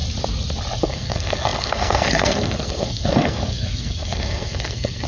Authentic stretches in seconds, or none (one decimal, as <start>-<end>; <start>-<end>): 0.0-0.8